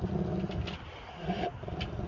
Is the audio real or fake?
real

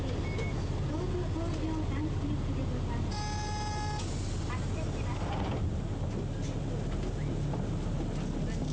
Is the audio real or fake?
real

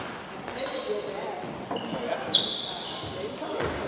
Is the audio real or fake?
real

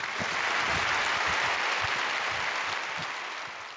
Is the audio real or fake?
real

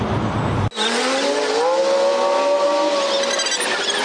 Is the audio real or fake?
real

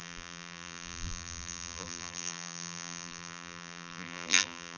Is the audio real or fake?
fake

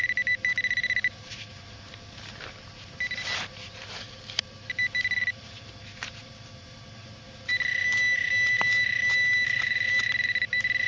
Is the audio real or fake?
fake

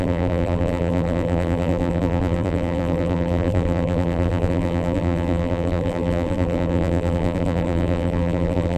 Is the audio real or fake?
fake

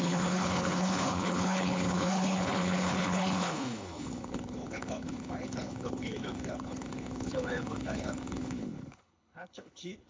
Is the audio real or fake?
fake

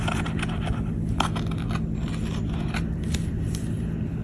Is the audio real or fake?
real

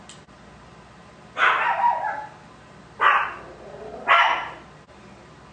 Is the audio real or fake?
real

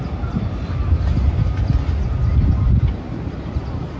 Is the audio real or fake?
real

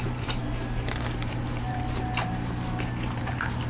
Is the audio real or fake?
fake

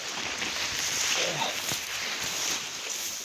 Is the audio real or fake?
real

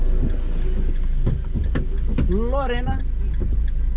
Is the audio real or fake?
real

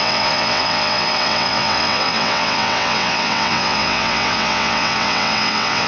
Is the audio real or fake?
fake